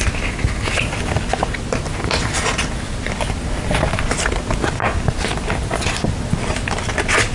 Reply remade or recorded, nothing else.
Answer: recorded